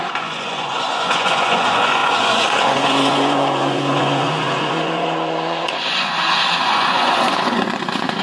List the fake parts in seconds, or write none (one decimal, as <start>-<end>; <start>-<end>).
0.0-8.2